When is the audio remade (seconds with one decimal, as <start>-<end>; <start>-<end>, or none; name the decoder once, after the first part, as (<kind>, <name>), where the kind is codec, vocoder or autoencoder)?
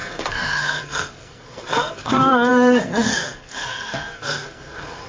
0.0-5.1 (codec, SNAC)